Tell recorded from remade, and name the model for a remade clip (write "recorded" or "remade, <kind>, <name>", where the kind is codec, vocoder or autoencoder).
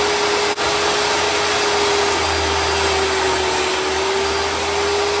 recorded